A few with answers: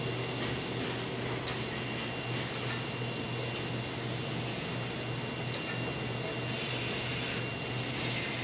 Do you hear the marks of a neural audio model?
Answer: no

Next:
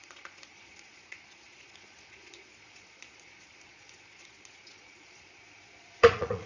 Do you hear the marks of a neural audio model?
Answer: yes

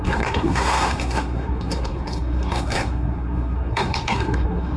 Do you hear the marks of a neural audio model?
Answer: yes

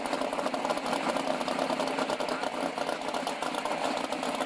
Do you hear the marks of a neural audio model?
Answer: no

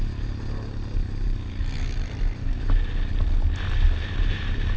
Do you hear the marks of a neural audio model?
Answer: no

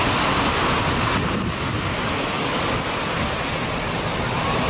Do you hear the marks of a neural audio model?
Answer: no